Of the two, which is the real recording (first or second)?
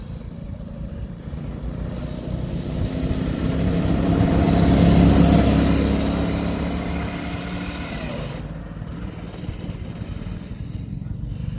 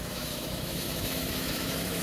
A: first